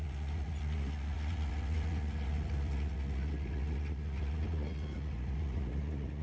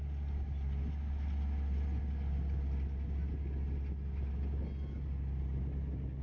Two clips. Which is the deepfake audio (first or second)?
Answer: first